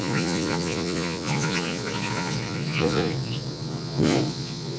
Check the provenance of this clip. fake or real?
fake